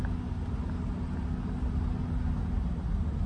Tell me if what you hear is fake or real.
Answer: real